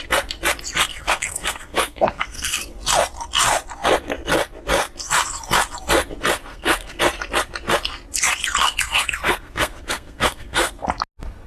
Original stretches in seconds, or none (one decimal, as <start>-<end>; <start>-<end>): 0.0-0.9; 2.6-6.5; 7.0-8.6; 10.7-11.5